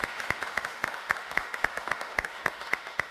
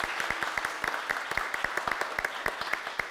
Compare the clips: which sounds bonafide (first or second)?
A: second